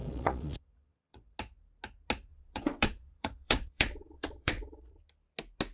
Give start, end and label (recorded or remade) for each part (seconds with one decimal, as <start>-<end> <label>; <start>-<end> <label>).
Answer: 0.0-1.4 remade; 1.4-2.3 recorded; 2.3-4.9 remade; 4.9-5.7 recorded